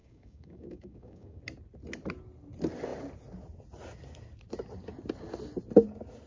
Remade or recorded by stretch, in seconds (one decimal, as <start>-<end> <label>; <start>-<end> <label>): 0.0-1.4 remade; 1.4-6.3 recorded